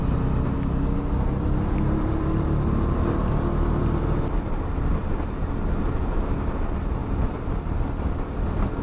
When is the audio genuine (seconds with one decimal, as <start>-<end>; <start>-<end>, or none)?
0.0-8.8